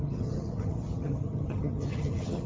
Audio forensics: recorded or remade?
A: remade